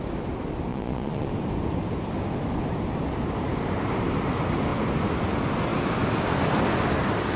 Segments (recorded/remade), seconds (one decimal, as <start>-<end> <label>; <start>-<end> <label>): 0.0-0.7 recorded; 0.7-1.3 remade; 1.3-7.4 recorded